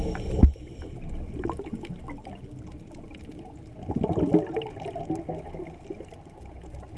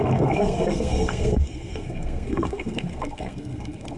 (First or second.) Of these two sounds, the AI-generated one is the second